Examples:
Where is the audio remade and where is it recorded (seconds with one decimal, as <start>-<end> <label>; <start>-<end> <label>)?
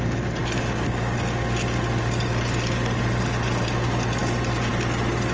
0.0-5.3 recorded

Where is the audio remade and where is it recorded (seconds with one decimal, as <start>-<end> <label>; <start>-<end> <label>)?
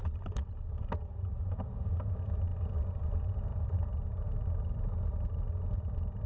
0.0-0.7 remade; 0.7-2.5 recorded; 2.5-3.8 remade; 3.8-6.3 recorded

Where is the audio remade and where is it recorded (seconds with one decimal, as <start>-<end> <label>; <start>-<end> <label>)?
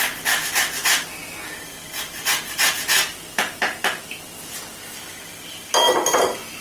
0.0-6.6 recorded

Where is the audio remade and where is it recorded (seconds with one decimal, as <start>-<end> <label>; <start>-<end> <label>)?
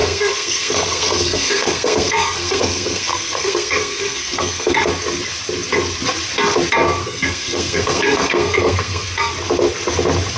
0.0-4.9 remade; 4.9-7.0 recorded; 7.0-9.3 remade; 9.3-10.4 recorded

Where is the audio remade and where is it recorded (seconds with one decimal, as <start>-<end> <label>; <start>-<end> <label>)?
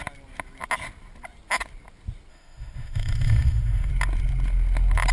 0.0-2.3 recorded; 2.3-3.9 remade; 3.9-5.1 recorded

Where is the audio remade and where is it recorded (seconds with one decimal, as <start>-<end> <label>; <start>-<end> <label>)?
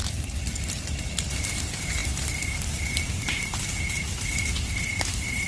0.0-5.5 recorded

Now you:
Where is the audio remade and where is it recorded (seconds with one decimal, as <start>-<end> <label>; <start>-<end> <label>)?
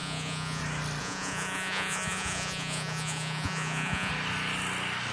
0.0-0.6 remade; 0.6-1.0 recorded; 1.0-4.1 remade; 4.1-5.1 recorded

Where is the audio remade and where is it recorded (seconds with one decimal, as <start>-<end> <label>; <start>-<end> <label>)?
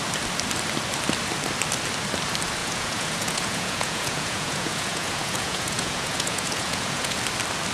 0.0-2.6 recorded; 2.6-7.2 remade; 7.2-7.7 recorded